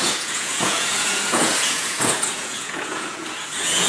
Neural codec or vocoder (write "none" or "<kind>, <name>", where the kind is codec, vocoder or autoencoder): vocoder, Vocos